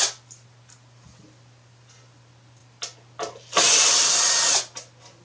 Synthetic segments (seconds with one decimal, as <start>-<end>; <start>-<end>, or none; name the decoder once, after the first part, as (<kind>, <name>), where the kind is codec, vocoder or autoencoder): none